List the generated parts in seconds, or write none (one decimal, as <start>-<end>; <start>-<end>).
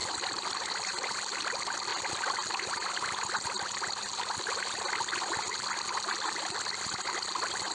none